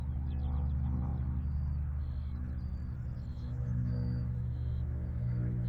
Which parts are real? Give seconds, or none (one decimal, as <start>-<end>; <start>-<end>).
0.0-3.3